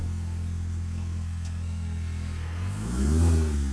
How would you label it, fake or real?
fake